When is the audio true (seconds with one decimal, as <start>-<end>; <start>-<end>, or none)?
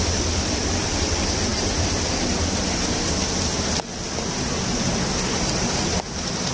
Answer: 0.0-6.5